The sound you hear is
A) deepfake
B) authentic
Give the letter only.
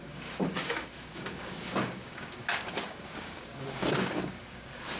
A